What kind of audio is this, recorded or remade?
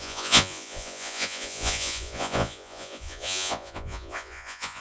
remade